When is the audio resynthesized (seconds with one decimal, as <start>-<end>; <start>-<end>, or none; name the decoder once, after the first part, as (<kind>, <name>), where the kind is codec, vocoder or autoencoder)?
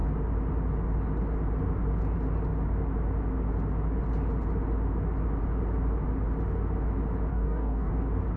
7.3-7.9 (codec, DAC)